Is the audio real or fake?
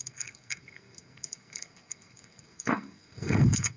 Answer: fake